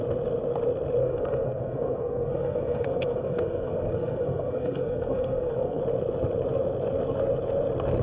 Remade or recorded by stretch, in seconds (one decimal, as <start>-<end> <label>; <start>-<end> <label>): 0.0-1.0 recorded; 1.0-5.8 remade; 5.8-8.0 recorded